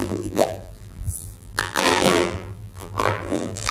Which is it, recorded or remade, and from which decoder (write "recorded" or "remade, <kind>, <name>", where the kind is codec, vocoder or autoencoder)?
remade, vocoder, BigVGAN v2